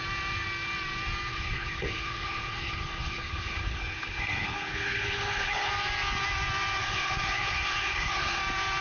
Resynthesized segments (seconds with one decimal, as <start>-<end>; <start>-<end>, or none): 1.3-5.7; 6.8-8.4